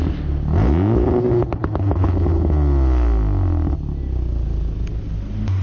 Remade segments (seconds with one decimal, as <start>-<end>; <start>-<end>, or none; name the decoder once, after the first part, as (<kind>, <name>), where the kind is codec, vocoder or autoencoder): none

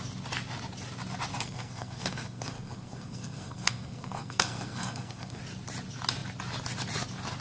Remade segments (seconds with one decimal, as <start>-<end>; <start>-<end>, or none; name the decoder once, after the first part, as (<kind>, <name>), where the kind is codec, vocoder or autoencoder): 1.3-5.4 (codec, SNAC)

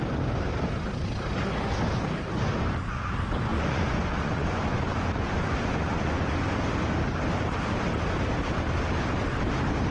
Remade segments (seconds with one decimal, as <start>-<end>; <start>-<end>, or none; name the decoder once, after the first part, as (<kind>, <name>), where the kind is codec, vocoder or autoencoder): 3.5-6.3 (vocoder, Vocos)

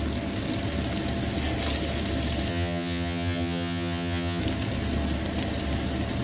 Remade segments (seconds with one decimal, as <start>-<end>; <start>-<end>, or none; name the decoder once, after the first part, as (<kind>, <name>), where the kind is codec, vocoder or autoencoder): 2.5-4.4 (vocoder, HiFi-GAN)

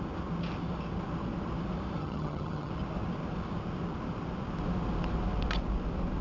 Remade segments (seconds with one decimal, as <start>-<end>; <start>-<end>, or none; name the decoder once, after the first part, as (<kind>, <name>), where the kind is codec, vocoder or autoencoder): 2.0-2.7 (vocoder, HiFi-GAN)

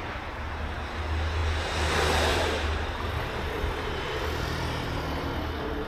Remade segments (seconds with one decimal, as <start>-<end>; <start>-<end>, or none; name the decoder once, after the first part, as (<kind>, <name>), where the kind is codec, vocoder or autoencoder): 2.3-5.9 (vocoder, BigVGAN v2)

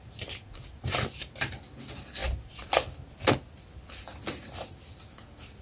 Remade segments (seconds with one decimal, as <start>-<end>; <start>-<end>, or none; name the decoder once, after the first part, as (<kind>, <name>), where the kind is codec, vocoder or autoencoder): none

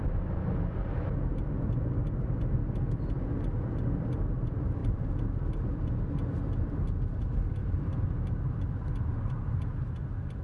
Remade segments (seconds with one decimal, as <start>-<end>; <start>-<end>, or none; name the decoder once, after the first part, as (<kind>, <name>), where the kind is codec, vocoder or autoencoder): 4.8-5.9 (vocoder, BigVGAN v2); 7.6-9.6